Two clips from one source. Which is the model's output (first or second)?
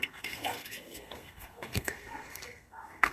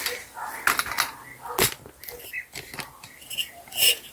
first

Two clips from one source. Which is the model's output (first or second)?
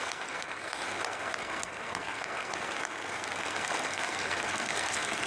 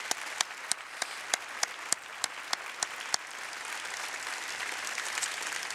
first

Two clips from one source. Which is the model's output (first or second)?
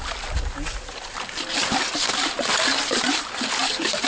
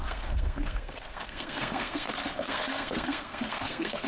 second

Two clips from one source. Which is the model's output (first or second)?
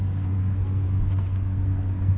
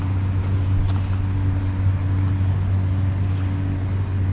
first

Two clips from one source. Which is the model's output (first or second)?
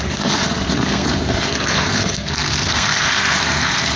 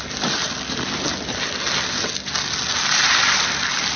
first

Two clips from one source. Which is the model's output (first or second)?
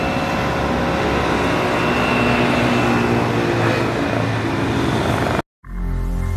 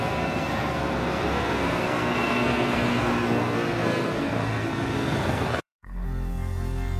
second